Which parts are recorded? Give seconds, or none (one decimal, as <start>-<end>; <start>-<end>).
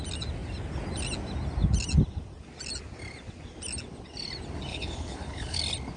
0.0-4.7; 5.6-6.0